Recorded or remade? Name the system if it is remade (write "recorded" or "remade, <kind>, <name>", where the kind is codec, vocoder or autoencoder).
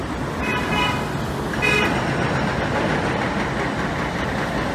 recorded